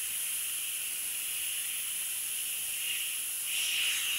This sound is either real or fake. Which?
real